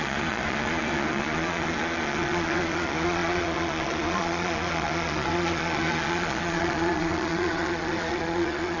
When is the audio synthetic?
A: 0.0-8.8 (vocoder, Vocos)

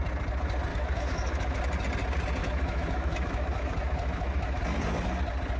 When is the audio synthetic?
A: 0.7-1.6 (autoencoder, DAC-VAE); 2.4-4.6